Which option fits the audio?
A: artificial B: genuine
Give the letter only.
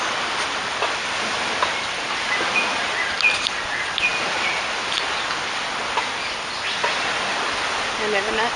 B